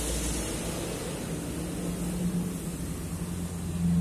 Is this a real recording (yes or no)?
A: yes